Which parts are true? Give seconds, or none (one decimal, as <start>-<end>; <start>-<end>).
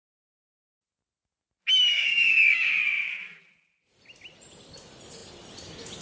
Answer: 0.0-1.9; 2.8-6.0